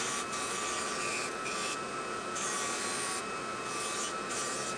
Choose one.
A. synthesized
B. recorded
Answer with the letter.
B